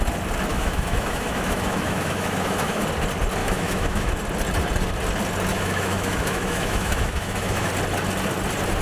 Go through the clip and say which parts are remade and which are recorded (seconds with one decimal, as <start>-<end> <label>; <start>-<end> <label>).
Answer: 0.0-0.5 recorded; 0.5-2.8 remade; 2.8-3.4 recorded; 3.4-4.2 remade; 4.2-5.5 recorded; 5.5-7.7 remade; 7.7-8.8 recorded